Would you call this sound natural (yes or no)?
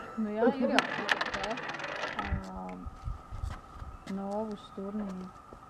yes